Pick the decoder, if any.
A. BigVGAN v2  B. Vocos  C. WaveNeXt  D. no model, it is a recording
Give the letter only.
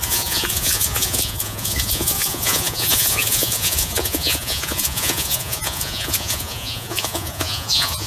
B